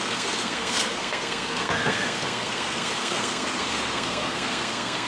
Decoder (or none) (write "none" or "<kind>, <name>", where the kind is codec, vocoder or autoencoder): codec, SNAC